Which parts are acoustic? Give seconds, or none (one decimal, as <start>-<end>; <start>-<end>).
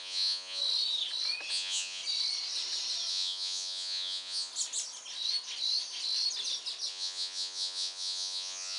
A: 0.6-1.5; 2.0-3.1; 4.5-6.9